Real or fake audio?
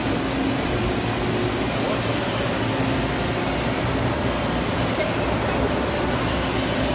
real